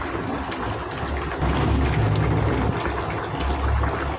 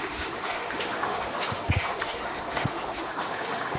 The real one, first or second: first